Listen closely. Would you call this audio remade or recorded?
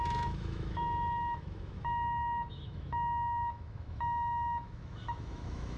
remade